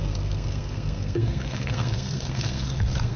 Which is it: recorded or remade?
remade